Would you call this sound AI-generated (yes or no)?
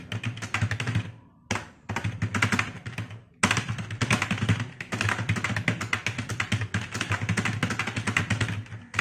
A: no